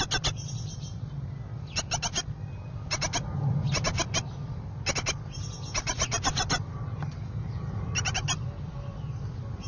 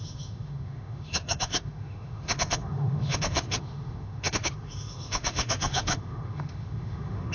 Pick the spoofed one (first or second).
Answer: second